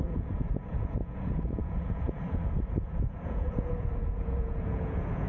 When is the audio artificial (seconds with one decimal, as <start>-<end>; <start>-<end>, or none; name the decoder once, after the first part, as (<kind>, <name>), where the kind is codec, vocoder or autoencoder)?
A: 0.0-5.3 (vocoder, Vocos)